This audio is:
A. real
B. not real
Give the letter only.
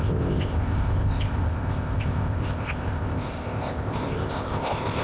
B